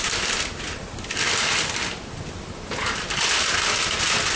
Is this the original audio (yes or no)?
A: yes